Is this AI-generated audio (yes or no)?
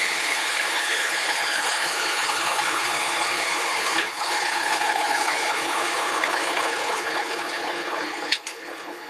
yes